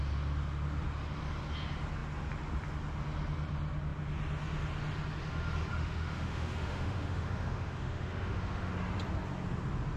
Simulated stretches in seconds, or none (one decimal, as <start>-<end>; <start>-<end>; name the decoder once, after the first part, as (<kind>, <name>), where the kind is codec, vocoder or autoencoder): 5.7-8.7 (autoencoder, DAC-VAE)